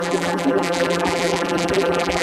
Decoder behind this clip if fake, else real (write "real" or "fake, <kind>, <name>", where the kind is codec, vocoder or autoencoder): fake, vocoder, BigVGAN v2